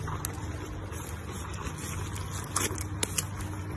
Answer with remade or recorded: recorded